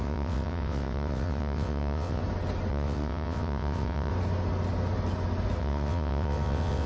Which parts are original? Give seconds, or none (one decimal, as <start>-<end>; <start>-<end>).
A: 2.2-2.7; 4.1-5.6